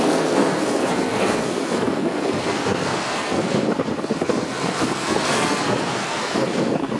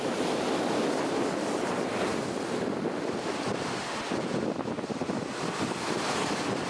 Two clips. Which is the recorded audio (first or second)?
second